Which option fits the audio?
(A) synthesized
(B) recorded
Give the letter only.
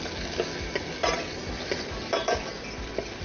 B